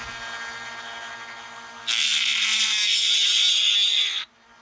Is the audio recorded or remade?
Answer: recorded